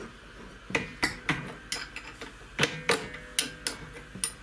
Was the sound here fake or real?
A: real